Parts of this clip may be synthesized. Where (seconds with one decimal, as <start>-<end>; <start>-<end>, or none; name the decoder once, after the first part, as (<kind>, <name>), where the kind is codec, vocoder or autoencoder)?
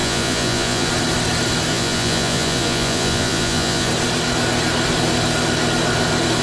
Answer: 0.0-0.9 (vocoder, Vocos); 1.7-3.9